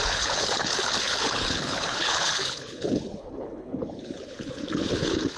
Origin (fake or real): fake